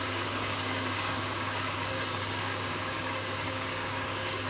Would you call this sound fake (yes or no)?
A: yes